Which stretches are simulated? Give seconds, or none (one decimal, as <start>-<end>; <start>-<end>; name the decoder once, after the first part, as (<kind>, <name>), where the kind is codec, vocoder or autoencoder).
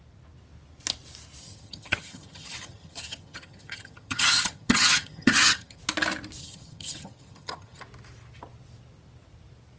1.4-5.8 (vocoder, HiFi-GAN); 6.4-7.8